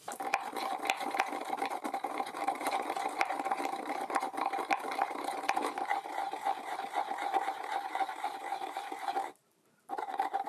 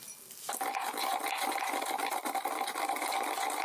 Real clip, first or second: second